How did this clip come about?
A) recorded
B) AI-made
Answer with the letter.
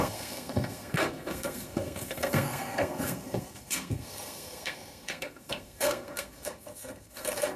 B